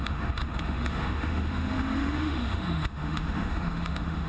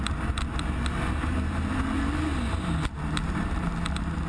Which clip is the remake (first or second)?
first